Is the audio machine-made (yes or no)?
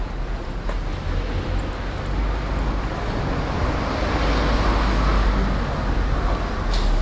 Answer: no